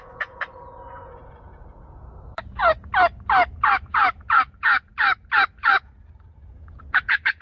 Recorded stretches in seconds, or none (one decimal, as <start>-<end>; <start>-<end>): 2.6-3.8; 4.9-5.8